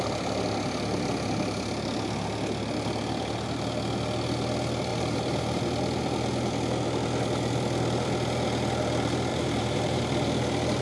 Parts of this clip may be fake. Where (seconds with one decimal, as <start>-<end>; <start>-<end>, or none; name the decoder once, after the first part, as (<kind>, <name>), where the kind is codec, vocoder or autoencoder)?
4.9-5.6 (vocoder, BigVGAN v2); 9.3-10.0